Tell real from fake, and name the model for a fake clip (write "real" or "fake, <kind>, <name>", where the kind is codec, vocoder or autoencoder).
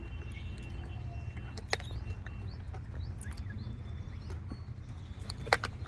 real